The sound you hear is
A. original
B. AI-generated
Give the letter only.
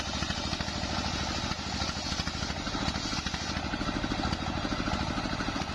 A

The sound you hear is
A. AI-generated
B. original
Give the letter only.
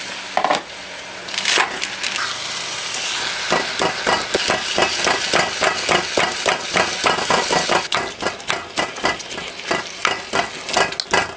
B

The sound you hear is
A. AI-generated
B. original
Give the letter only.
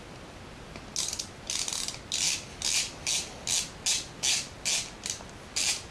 B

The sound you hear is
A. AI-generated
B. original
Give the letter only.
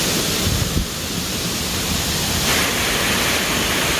B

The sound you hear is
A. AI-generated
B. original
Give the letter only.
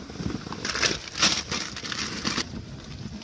B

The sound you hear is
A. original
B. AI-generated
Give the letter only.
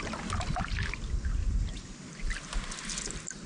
A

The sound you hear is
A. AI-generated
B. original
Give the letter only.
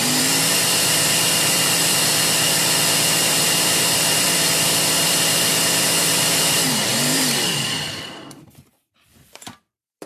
A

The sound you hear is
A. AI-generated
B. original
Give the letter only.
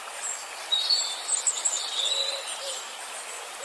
B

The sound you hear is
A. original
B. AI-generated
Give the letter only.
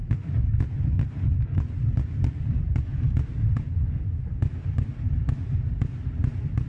A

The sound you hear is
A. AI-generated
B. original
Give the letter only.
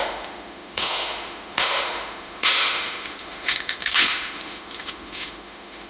A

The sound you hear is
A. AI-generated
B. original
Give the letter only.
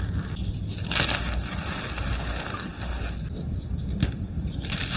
B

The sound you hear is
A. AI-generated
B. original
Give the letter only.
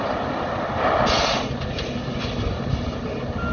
B